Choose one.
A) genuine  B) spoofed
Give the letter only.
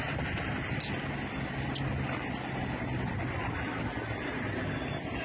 A